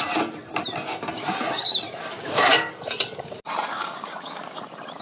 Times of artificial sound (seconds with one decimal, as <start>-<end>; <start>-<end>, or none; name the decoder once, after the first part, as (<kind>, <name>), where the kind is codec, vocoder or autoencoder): 2.0-2.7 (codec, DAC); 3.7-4.6